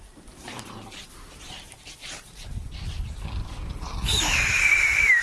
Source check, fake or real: fake